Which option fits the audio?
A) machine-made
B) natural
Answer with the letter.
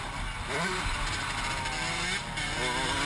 B